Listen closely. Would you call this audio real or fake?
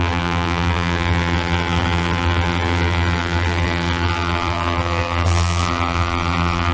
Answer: fake